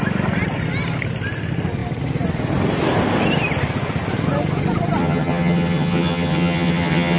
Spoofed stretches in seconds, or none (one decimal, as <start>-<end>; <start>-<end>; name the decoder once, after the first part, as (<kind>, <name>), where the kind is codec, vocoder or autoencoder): 5.0-7.2 (vocoder, HiFi-GAN)